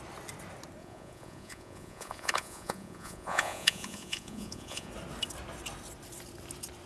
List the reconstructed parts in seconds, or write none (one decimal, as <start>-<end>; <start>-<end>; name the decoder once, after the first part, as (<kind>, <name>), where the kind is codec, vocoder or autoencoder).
0.8-4.9 (vocoder, Vocos)